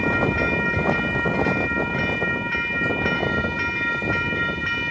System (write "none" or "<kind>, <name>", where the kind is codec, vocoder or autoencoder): none